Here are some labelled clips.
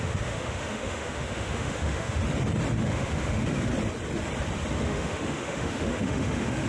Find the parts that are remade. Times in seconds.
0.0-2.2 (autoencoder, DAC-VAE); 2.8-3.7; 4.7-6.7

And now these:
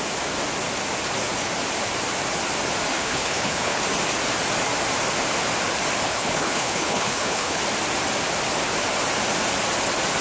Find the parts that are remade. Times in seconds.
2.9-3.8 (codec, HILCodec); 6.0-7.6

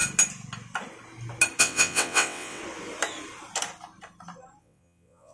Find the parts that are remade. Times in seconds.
1.6-2.6 (vocoder, WaveNeXt); 4.6-5.3

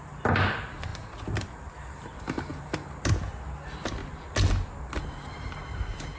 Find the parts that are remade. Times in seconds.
none

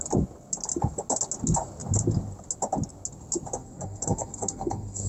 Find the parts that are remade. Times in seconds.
3.6-5.1 (codec, SNAC)

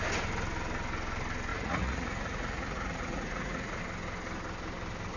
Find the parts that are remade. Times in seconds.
1.5-3.8 (vocoder, Vocos)

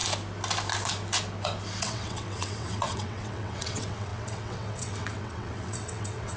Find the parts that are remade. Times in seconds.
1.8-6.4 (vocoder, WaveNeXt)